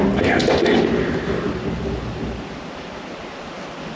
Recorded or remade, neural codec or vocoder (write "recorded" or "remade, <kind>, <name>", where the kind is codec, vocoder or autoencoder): recorded